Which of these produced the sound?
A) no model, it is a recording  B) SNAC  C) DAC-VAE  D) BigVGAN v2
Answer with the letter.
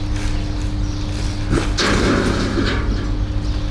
A